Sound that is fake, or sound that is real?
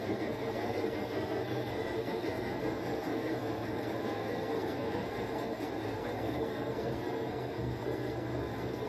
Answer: fake